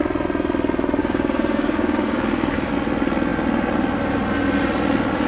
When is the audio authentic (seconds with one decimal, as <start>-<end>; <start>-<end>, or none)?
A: 0.0-1.0; 2.7-5.3